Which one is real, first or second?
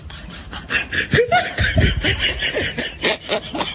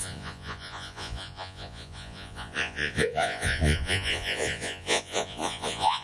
first